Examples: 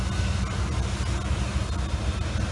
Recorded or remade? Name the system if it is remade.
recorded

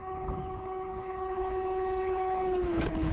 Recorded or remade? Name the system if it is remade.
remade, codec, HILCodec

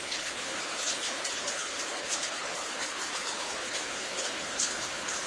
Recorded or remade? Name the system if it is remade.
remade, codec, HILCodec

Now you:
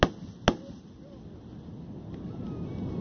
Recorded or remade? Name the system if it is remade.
recorded